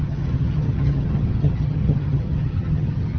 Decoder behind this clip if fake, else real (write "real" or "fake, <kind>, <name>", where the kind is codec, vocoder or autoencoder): fake, vocoder, HiFi-GAN